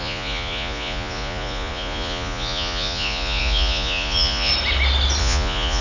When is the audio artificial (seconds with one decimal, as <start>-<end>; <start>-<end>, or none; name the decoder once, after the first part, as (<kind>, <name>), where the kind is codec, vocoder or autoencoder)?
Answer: 0.0-4.5 (vocoder, Vocos); 5.2-5.8